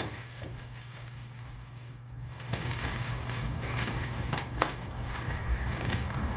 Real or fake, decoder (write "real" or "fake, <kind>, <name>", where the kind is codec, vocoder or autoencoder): fake, codec, DAC